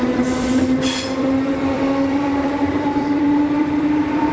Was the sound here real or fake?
fake